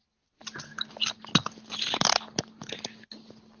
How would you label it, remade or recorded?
recorded